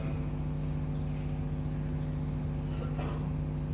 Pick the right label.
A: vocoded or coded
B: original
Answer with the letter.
B